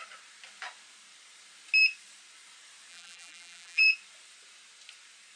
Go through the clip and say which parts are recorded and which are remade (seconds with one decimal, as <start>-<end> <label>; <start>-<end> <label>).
0.0-2.9 recorded; 2.9-3.9 remade; 3.9-5.4 recorded